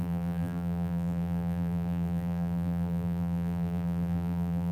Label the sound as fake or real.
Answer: fake